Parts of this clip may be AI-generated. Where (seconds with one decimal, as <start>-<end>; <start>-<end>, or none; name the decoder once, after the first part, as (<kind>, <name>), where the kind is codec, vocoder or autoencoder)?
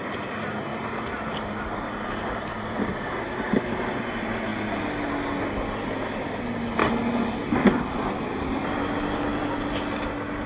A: none